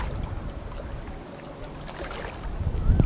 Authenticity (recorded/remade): recorded